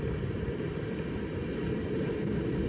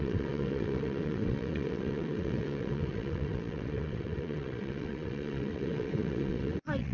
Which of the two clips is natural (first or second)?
first